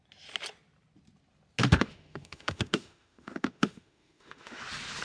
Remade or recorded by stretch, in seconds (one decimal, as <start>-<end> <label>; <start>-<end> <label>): 0.0-1.6 recorded; 1.6-4.6 remade; 4.6-5.0 recorded